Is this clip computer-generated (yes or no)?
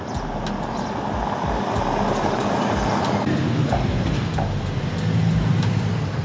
no